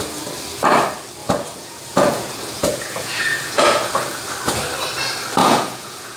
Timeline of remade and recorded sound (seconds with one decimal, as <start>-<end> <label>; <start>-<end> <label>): 0.0-1.2 recorded; 1.2-4.2 remade; 4.2-5.4 recorded; 5.4-6.2 remade